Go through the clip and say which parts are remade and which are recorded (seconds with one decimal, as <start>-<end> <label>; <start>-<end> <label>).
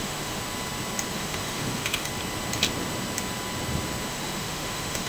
0.0-0.4 remade; 0.4-1.1 recorded; 1.1-2.1 remade; 2.1-4.1 recorded; 4.1-5.1 remade